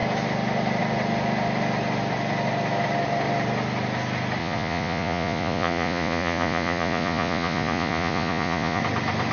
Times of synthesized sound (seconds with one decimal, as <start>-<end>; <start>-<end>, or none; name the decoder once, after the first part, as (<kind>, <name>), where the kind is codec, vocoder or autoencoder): 4.4-8.8 (vocoder, Vocos)